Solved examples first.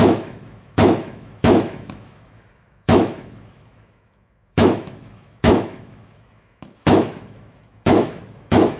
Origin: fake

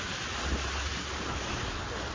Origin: real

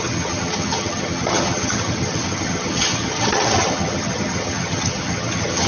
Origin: fake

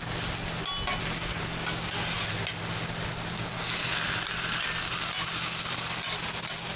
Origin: real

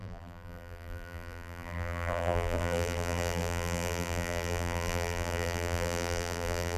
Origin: fake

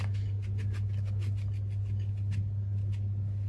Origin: real